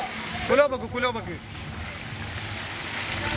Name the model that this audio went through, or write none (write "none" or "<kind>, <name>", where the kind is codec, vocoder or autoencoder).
none